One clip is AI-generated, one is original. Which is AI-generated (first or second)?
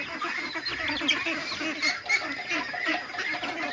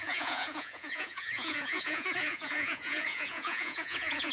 second